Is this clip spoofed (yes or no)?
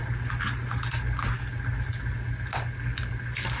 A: no